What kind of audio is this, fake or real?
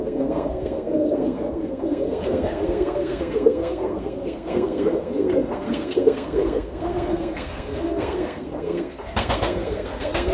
fake